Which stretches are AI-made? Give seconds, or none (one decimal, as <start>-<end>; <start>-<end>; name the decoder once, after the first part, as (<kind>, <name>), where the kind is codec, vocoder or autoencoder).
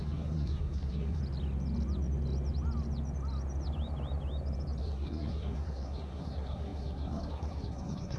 0.0-1.2 (codec, SNAC); 4.8-8.2